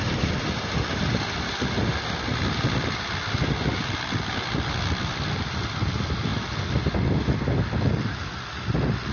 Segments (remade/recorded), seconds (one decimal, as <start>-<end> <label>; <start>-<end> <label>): 0.0-9.1 recorded